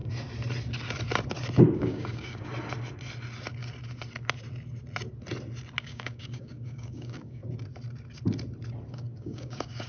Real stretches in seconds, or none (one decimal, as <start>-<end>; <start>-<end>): 0.0-1.6; 2.5-5.8; 7.4-8.9